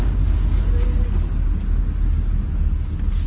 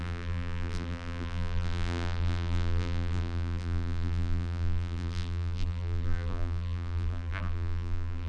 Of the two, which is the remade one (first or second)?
second